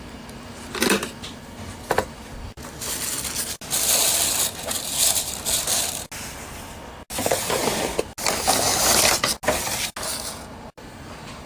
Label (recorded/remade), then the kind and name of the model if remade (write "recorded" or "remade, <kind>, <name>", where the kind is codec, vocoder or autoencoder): recorded